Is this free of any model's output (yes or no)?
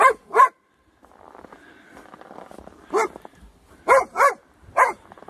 yes